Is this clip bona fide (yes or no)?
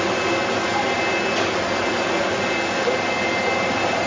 yes